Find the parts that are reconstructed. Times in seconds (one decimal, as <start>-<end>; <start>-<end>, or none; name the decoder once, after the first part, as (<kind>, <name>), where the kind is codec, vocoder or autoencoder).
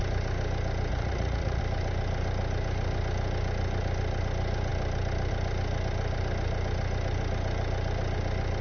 0.9-1.6 (vocoder, Vocos)